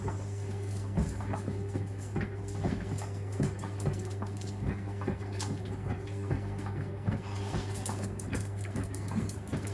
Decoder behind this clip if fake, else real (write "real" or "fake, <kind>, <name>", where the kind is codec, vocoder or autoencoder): fake, codec, SNAC